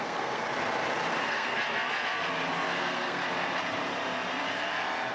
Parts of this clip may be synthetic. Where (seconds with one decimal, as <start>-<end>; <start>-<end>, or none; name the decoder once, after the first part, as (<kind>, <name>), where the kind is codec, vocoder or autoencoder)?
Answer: 0.0-0.4 (codec, SNAC); 1.2-1.6; 2.8-3.2